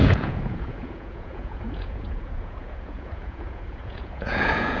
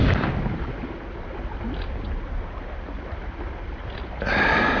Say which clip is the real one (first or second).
second